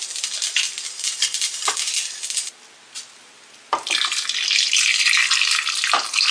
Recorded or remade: recorded